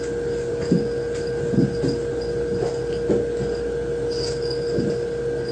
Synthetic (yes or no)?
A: no